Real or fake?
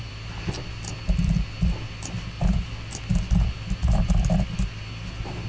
real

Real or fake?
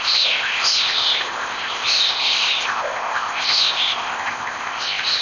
fake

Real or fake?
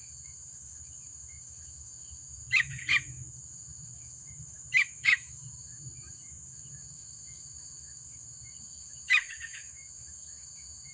fake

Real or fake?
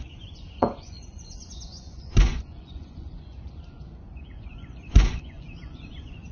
fake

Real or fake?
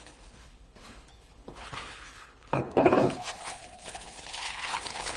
fake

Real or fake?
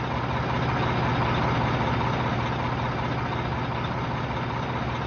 real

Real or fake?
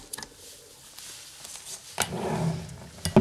real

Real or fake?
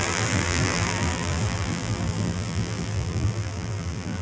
fake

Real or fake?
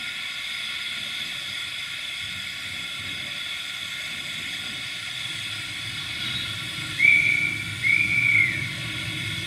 real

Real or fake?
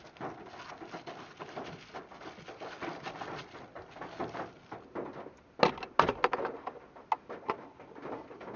real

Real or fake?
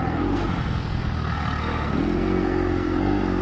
fake